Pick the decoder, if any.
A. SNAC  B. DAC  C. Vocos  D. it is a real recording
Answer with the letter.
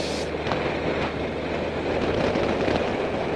D